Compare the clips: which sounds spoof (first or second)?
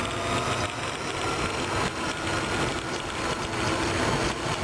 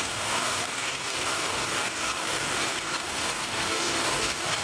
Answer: second